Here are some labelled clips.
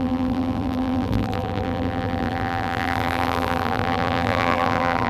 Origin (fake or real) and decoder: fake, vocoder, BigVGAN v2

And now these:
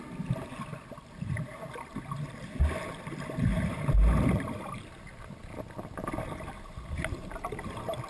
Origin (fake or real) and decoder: real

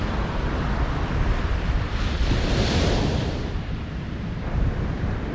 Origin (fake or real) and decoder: real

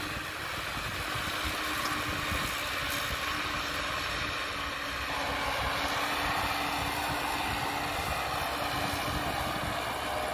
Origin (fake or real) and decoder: real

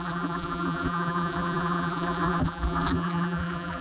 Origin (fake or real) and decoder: fake, vocoder, BigVGAN v2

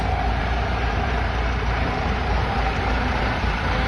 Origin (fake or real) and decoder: fake, vocoder, BigVGAN v2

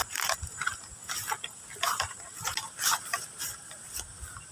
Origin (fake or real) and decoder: fake, vocoder, BigVGAN v2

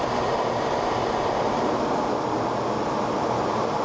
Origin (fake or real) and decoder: real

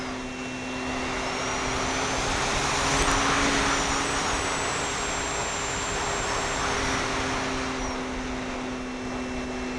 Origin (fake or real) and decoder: real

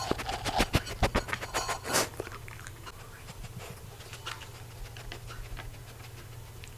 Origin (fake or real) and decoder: real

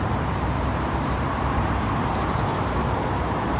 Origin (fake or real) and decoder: fake, vocoder, BigVGAN v2